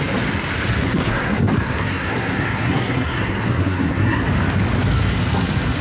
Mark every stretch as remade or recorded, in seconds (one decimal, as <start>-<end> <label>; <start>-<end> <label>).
0.0-0.7 recorded; 0.7-4.2 remade; 4.2-5.8 recorded